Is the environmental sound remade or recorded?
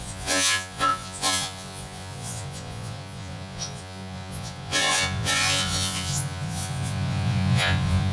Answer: remade